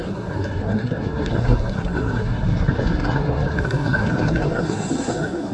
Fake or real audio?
fake